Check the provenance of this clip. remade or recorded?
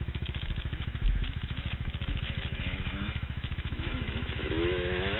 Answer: remade